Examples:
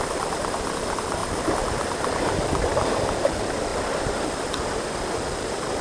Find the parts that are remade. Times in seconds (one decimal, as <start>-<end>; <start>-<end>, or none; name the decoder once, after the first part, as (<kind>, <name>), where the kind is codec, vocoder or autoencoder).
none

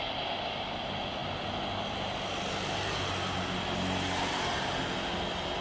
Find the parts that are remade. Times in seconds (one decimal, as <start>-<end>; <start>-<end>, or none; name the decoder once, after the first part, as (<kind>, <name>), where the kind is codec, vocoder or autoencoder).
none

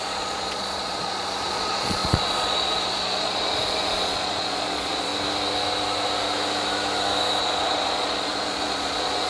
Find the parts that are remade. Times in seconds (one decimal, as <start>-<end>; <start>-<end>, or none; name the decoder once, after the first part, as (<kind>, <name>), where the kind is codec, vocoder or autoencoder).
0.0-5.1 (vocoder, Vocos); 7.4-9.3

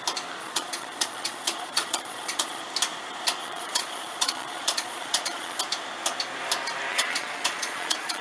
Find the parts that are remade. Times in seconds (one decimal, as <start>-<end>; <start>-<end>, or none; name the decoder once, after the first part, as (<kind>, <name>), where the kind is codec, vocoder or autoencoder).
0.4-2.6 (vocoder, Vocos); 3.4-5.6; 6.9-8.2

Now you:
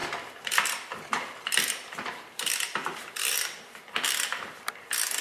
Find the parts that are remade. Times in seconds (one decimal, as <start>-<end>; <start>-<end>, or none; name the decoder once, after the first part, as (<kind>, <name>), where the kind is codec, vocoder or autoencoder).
0.0-3.1 (vocoder, BigVGAN v2)

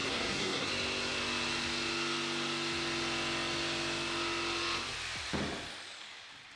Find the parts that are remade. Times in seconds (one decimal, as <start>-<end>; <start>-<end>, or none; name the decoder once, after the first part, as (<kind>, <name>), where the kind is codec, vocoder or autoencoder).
0.0-0.7 (codec, SNAC)

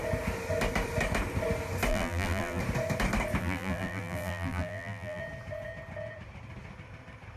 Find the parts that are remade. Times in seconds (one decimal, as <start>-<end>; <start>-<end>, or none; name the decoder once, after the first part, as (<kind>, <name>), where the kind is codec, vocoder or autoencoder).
1.9-2.6 (vocoder, BigVGAN v2); 3.4-5.2

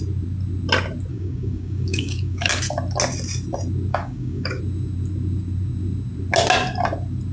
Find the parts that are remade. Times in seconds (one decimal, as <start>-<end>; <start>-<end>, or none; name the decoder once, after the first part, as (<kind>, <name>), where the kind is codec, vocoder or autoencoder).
1.1-2.5 (codec, DAC); 3.9-4.6